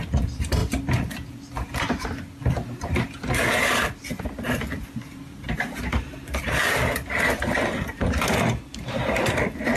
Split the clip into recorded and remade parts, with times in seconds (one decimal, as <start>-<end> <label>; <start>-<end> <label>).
0.0-0.6 remade; 0.6-4.2 recorded; 4.2-9.8 remade